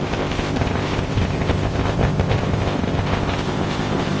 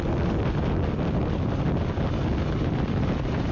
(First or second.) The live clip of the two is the second